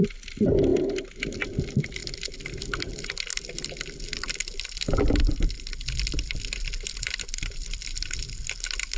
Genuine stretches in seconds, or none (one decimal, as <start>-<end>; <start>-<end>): 0.7-1.2